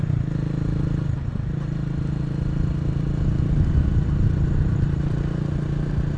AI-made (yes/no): no